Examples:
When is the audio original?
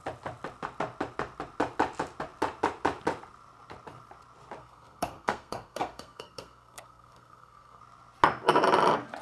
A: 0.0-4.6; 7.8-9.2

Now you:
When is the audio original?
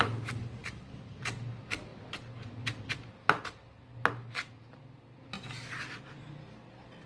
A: 0.0-7.1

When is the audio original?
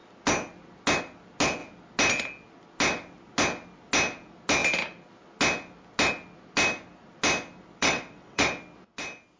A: 0.0-7.8; 8.5-9.4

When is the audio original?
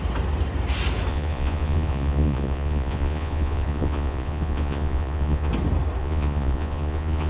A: 0.0-1.1; 5.5-6.0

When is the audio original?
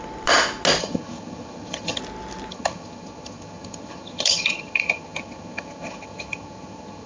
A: 0.0-0.8; 2.0-2.5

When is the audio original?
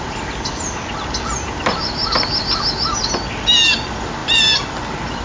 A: 0.0-5.2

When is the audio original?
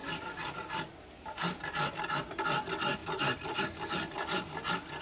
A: 0.0-3.0; 3.6-5.0